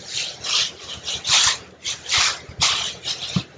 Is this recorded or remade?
recorded